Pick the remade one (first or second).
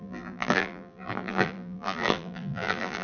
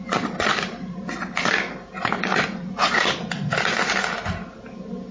first